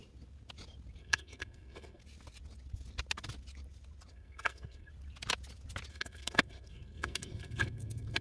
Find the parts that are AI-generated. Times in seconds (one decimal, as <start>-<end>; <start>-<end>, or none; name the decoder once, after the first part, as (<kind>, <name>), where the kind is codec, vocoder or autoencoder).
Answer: 1.0-2.0 (codec, SNAC); 4.1-4.9; 5.9-8.2